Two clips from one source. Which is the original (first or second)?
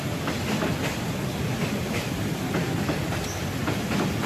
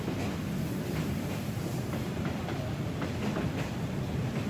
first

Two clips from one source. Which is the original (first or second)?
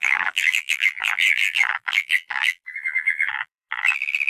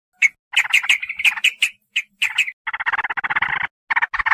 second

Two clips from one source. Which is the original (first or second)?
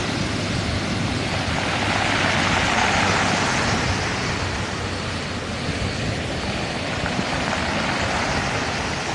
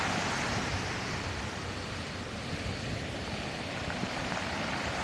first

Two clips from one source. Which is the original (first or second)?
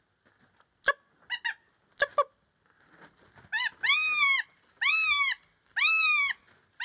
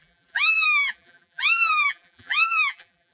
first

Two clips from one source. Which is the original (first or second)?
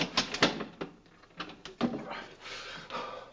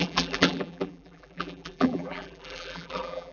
first